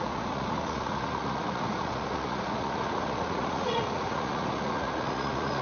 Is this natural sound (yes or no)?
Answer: no